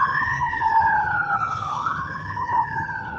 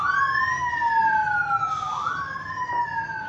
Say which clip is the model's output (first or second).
first